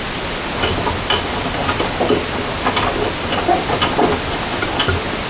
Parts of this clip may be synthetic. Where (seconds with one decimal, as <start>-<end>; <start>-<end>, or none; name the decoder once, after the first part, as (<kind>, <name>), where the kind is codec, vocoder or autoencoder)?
none